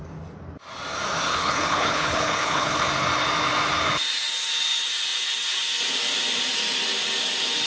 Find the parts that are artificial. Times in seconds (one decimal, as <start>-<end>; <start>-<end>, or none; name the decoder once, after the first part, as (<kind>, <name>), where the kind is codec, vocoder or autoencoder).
1.3-2.9 (codec, HILCodec)